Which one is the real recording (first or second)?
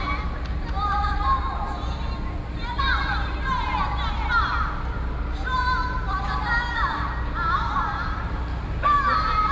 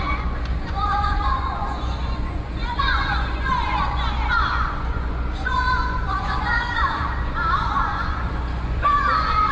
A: first